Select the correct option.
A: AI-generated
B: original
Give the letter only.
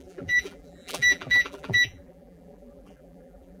A